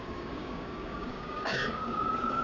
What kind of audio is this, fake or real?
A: fake